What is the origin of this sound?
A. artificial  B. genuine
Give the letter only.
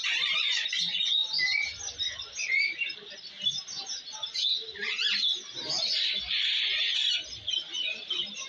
B